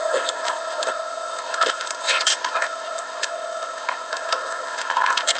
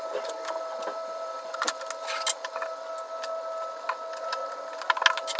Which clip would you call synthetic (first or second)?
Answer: first